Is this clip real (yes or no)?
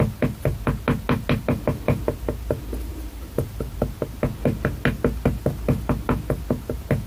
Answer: yes